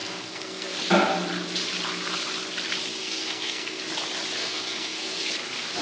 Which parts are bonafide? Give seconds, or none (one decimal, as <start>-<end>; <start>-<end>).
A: 0.8-3.0; 3.8-4.4; 5.3-5.8